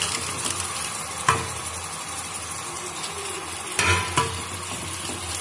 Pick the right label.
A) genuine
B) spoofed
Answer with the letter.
A